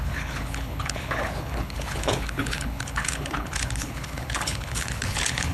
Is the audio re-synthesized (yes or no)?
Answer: yes